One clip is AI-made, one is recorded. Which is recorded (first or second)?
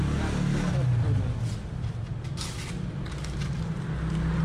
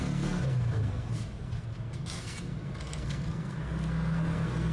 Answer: first